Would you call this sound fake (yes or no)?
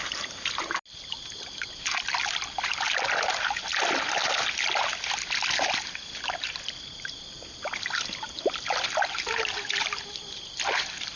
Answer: no